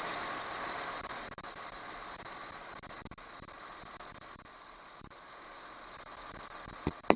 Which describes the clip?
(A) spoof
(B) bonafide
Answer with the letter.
B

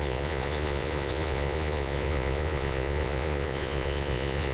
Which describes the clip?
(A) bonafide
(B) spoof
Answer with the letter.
B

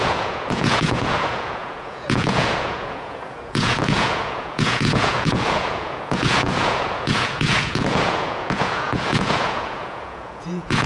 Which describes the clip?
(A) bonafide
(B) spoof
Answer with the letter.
B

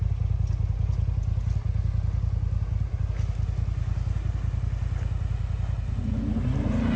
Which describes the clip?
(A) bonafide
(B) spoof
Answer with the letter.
A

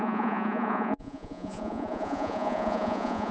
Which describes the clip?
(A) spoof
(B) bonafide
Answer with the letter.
A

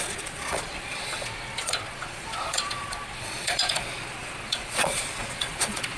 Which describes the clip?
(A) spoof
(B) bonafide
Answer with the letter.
A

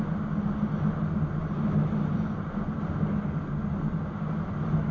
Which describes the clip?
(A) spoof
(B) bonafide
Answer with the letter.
B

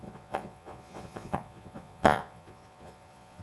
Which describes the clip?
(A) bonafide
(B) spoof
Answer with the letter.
B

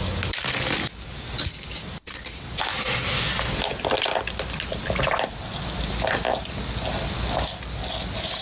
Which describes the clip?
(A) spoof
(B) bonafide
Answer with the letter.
B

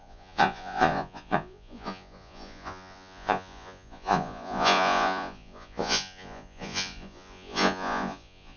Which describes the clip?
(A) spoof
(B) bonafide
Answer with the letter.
A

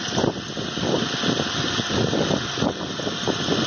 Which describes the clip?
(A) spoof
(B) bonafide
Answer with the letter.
B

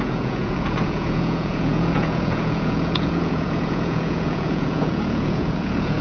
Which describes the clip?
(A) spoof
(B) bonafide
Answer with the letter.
A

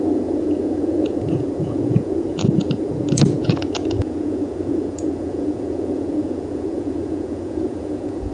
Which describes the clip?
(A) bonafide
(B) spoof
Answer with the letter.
B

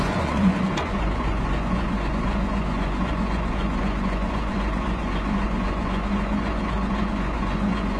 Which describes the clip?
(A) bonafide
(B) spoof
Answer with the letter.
B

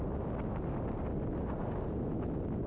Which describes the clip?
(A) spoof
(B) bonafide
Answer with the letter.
B